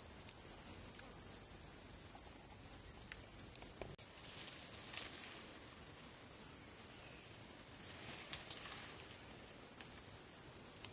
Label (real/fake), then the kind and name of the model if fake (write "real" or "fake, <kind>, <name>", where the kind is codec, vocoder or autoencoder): real